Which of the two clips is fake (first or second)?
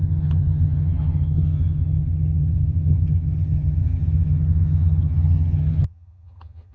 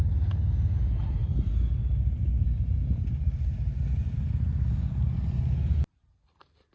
first